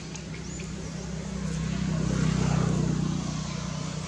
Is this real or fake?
real